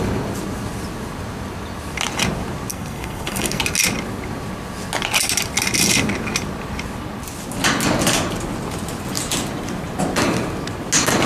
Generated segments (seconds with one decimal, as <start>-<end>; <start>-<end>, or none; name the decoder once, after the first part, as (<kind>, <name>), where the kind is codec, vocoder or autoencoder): 2.7-3.6 (codec, SNAC)